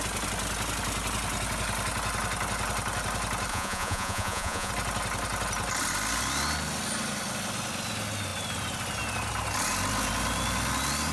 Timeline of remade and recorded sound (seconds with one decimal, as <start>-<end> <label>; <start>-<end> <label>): 0.0-3.5 recorded; 3.5-4.7 remade; 4.7-11.1 recorded